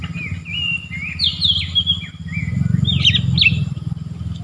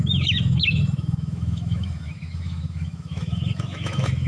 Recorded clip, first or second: first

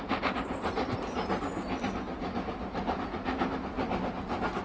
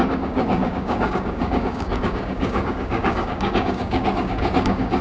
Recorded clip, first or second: first